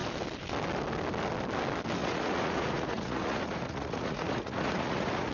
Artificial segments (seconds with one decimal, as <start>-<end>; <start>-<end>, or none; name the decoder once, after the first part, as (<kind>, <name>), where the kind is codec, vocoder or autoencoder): 2.0-5.3 (vocoder, Vocos)